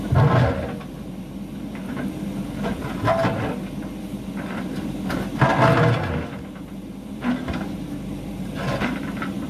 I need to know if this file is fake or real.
real